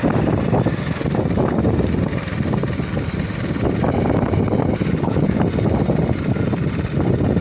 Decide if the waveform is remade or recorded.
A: recorded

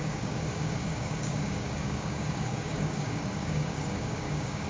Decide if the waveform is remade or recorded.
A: remade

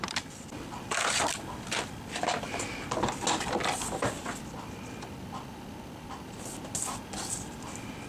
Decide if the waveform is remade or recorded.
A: recorded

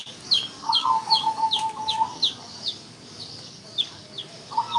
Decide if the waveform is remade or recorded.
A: remade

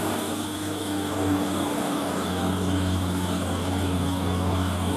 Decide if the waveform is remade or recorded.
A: remade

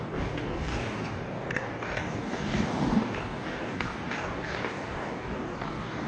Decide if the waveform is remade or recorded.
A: remade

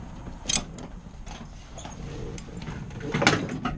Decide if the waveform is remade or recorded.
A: recorded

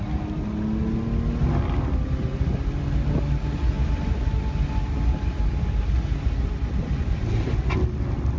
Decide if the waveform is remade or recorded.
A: recorded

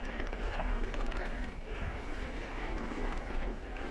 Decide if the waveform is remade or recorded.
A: remade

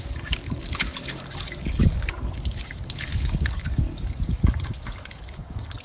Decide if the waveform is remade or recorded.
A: remade